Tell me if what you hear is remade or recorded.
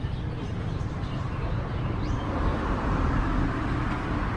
remade